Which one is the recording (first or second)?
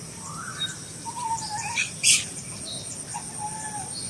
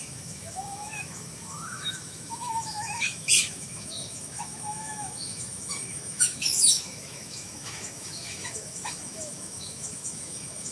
first